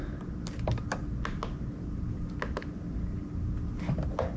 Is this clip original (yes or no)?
yes